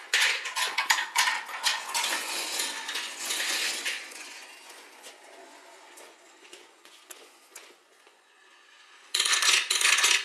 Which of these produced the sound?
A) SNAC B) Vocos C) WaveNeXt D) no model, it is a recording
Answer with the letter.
B